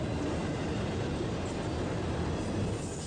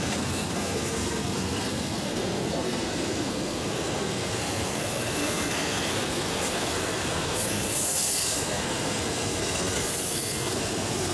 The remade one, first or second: second